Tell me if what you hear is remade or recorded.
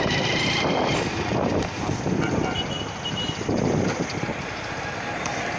recorded